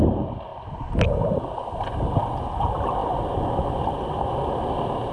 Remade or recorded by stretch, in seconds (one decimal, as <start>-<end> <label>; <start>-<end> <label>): 0.0-5.1 recorded

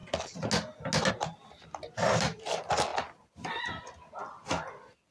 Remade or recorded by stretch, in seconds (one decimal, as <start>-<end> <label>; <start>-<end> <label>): 0.0-5.1 recorded